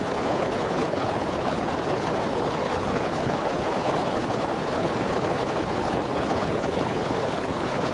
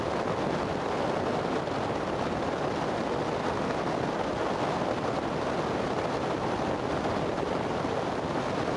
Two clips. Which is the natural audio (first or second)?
second